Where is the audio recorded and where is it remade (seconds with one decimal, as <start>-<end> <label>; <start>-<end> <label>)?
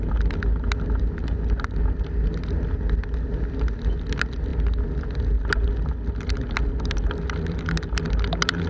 0.0-8.7 recorded